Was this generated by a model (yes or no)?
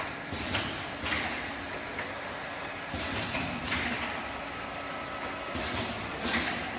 no